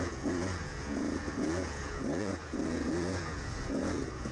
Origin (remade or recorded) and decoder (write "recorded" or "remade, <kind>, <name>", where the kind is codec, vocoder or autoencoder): remade, vocoder, Vocos